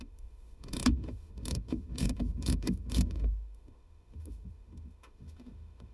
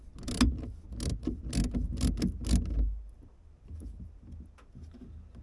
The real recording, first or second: second